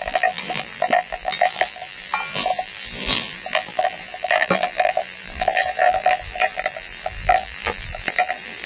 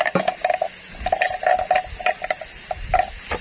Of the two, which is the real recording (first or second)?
second